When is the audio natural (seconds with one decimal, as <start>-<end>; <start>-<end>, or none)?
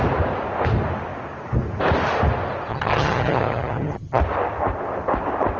0.0-2.7; 4.2-5.6